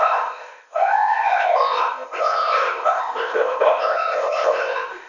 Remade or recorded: remade